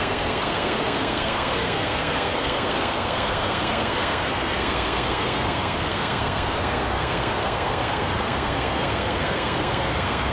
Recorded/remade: remade